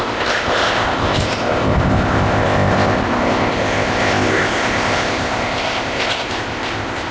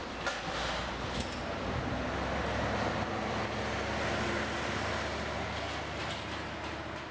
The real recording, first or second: second